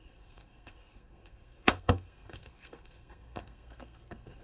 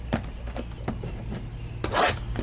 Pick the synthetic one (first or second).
first